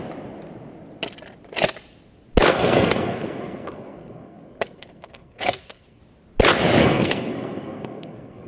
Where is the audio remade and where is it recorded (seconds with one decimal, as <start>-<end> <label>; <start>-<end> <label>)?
0.0-2.5 recorded; 2.5-6.0 remade; 6.0-6.8 recorded; 6.8-8.5 remade